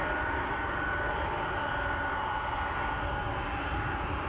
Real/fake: real